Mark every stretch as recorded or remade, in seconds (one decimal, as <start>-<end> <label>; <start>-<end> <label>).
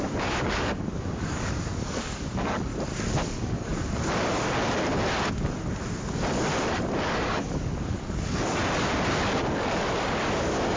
0.0-2.7 remade; 2.7-3.2 recorded; 3.2-3.7 remade; 3.7-6.7 recorded; 6.7-8.6 remade; 8.6-9.5 recorded; 9.5-10.8 remade